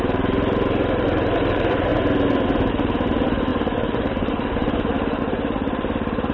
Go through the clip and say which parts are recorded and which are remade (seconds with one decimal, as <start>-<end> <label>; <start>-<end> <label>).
0.0-1.9 remade; 1.9-2.7 recorded; 2.7-6.3 remade